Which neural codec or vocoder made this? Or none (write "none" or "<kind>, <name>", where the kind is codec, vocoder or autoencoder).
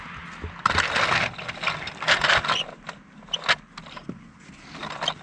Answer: none